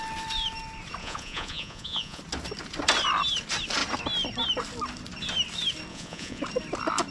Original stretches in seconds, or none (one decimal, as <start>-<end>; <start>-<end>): 0.0-1.0; 2.2-5.9; 6.4-7.1

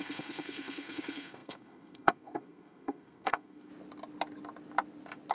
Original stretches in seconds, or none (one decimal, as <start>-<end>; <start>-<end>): 3.7-5.3

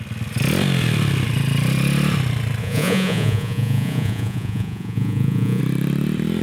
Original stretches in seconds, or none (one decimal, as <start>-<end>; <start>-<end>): 0.0-2.6; 5.6-6.4

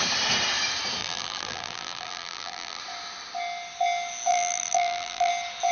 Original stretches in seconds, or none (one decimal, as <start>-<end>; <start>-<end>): 0.0-1.0; 2.8-4.3; 5.3-5.7

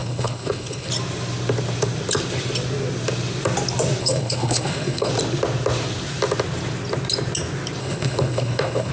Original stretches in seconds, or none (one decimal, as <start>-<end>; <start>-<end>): 0.9-4.0; 5.1-7.8

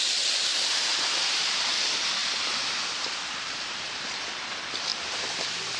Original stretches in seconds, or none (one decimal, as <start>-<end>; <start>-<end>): 0.0-0.5; 1.7-2.2; 4.3-4.9